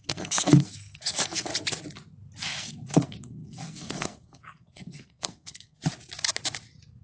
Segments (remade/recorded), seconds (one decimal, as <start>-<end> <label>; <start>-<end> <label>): 0.0-1.5 remade; 1.5-2.4 recorded; 2.4-5.8 remade; 5.8-7.0 recorded